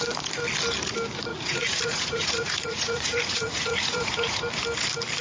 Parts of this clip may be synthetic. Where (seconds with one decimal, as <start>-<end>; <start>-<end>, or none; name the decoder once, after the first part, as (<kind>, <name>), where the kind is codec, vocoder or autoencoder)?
1.3-4.4 (vocoder, Vocos)